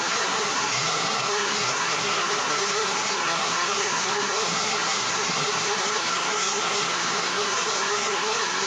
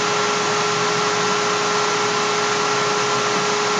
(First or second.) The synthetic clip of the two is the first